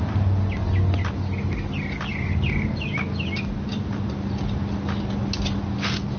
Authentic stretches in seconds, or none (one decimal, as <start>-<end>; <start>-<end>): 0.0-6.2